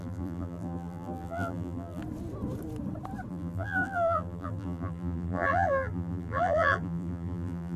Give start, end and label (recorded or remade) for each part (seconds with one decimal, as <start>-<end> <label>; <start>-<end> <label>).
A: 0.0-2.0 remade; 2.0-3.3 recorded; 3.3-7.8 remade